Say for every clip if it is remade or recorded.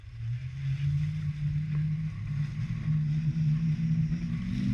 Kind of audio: recorded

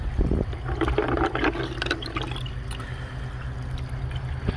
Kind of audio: recorded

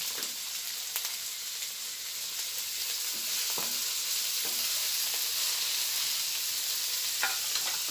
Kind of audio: recorded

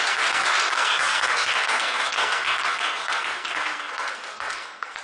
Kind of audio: remade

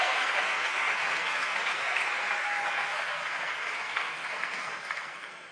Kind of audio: remade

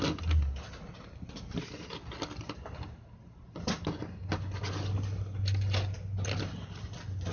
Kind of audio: recorded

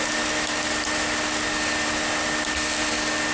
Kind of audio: recorded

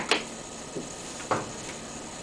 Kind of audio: recorded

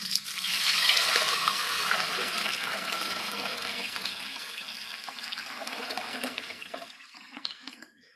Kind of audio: remade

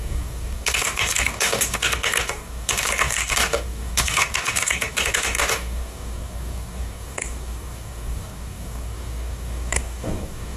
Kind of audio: remade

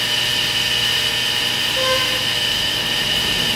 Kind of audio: recorded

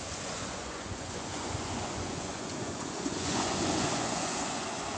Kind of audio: remade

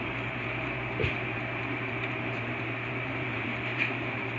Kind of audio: remade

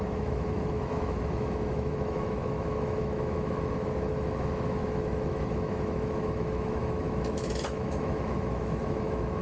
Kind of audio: remade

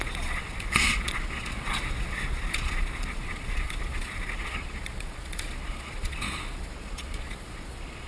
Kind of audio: remade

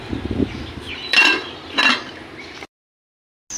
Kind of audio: recorded